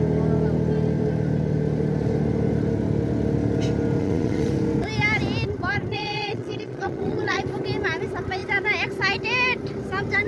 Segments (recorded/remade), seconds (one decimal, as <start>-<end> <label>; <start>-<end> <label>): 0.0-4.0 recorded; 4.0-4.5 remade; 4.5-5.9 recorded; 5.9-7.4 remade; 7.4-10.3 recorded